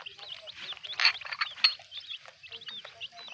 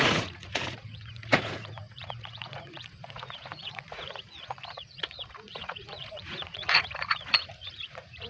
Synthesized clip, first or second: second